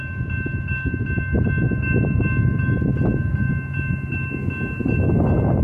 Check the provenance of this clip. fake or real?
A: real